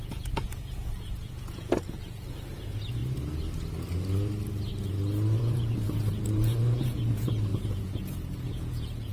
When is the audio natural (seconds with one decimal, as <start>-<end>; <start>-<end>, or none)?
3.0-5.4

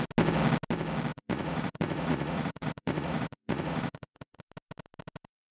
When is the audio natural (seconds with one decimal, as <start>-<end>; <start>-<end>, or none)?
0.0-1.1; 4.4-5.5